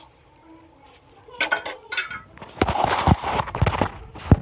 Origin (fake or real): real